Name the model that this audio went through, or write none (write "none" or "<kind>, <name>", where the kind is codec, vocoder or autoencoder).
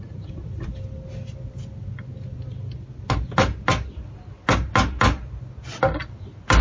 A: none